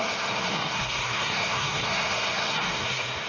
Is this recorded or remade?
remade